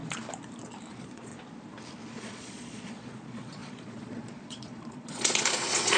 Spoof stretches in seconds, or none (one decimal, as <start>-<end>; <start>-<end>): 0.9-1.3; 2.2-6.0